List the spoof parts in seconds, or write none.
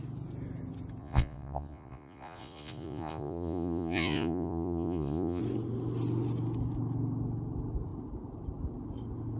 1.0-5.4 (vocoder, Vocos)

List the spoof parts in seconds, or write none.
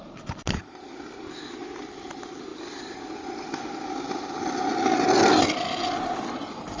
none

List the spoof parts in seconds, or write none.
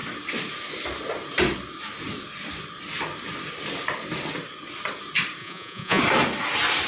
5.4-6.0 (vocoder, Vocos)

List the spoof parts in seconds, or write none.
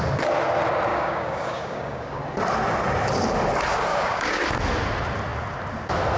0.9-2.2 (codec, DAC); 3.9-4.4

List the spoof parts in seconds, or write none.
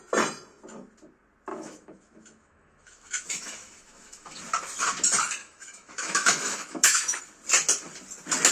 1.5-4.4 (autoencoder, DAC-VAE); 5.4-7.2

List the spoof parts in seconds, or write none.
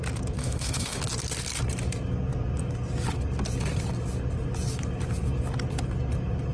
0.4-1.0 (autoencoder, DAC-VAE)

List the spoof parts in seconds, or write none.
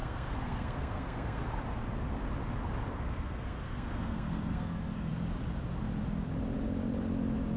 0.0-1.4 (codec, SNAC); 2.9-5.1